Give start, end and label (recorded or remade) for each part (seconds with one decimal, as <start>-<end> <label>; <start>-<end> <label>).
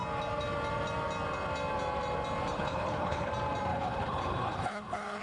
0.0-2.5 recorded; 2.5-3.3 remade; 3.3-3.7 recorded; 3.7-5.2 remade